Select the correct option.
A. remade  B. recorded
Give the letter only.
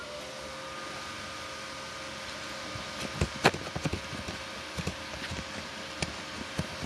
B